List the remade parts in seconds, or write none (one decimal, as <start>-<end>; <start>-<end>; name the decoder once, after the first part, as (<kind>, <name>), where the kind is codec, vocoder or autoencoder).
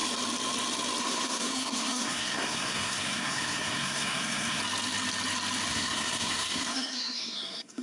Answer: 1.0-4.6 (codec, SNAC); 5.7-7.8